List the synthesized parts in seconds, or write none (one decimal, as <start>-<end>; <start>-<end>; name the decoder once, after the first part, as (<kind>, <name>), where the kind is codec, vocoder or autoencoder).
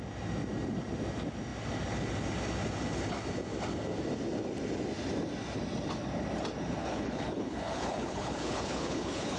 6.8-9.4 (codec, HILCodec)